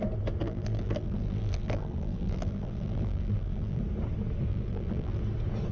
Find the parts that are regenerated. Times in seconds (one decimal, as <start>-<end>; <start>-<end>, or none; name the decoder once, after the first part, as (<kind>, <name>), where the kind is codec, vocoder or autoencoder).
0.4-3.8 (vocoder, BigVGAN v2); 4.5-5.2